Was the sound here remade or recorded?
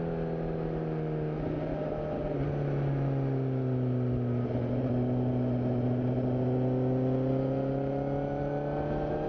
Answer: recorded